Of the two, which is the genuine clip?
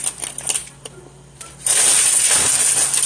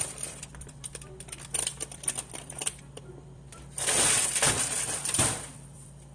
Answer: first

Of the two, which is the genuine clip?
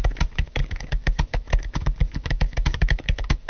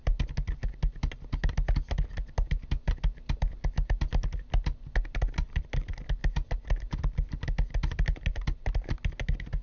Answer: second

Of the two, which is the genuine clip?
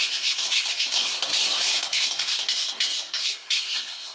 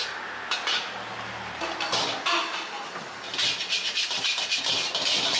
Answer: second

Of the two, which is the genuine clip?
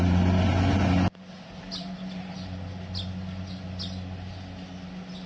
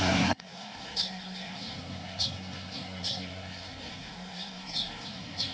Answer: first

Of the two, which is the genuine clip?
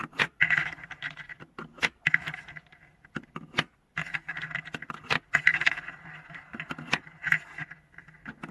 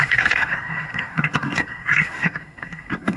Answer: first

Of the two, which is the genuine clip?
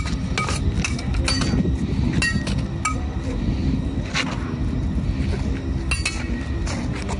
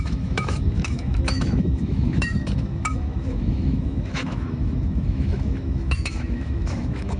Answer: first